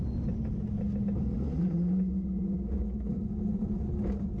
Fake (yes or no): no